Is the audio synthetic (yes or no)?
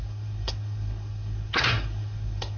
yes